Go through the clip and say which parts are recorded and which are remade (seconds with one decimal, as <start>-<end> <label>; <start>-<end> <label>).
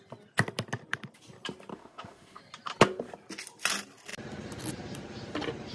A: 0.0-1.7 recorded; 1.7-2.4 remade; 2.4-5.7 recorded